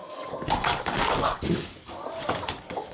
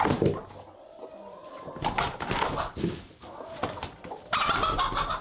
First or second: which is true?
second